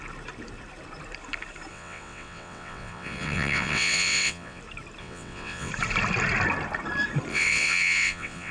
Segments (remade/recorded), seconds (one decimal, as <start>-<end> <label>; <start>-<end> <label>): 0.0-1.7 recorded; 1.7-4.6 remade; 4.6-5.0 recorded; 5.0-5.7 remade; 5.7-7.3 recorded; 7.3-8.5 remade